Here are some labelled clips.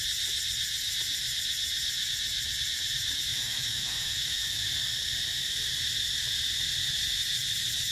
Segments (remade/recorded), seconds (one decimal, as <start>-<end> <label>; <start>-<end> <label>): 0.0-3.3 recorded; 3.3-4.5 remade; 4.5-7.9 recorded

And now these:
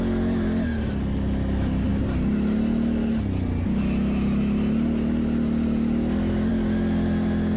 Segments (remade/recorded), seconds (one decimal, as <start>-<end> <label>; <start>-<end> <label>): 0.0-7.6 recorded

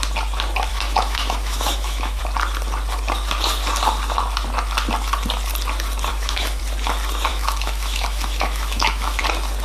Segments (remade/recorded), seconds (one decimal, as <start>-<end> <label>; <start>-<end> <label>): 0.0-0.7 recorded; 0.7-2.2 remade; 2.2-6.1 recorded; 6.1-6.6 remade; 6.6-7.3 recorded; 7.3-9.2 remade; 9.2-9.6 recorded

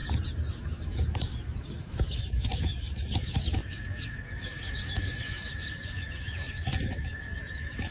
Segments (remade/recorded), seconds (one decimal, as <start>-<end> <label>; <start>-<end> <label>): 0.0-0.6 recorded; 0.6-7.9 remade

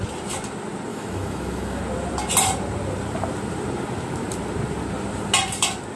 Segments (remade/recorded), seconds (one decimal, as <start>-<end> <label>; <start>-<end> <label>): 0.0-0.9 recorded; 0.9-1.8 remade; 1.8-6.0 recorded

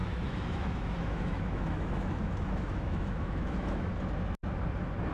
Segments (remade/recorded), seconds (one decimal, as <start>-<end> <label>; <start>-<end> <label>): 0.0-3.9 remade; 3.9-5.1 recorded

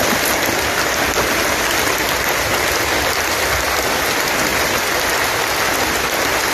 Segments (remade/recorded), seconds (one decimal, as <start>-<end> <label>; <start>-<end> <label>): 0.0-6.5 recorded

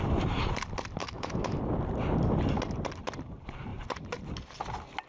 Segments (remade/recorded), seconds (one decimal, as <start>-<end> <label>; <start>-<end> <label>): 0.0-1.0 recorded; 1.0-1.6 remade; 1.6-5.1 recorded